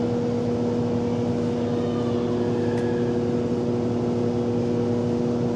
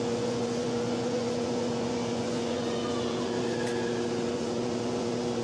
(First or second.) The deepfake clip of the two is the second